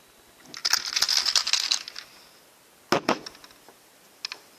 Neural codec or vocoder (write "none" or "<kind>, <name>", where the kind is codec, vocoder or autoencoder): none